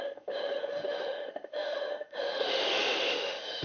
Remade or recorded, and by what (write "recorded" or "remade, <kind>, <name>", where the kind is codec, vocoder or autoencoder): remade, autoencoder, DAC-VAE